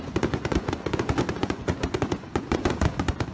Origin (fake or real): fake